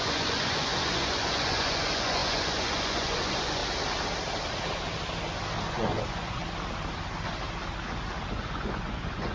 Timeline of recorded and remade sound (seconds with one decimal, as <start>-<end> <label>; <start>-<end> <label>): 0.0-3.6 remade; 3.6-5.7 recorded; 5.7-6.4 remade; 6.4-8.3 recorded; 8.3-9.3 remade